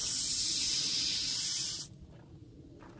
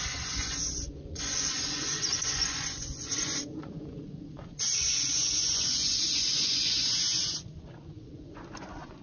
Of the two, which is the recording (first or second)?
first